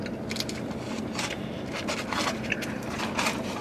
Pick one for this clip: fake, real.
real